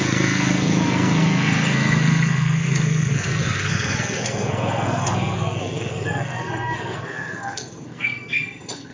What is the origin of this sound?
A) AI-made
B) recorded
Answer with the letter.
A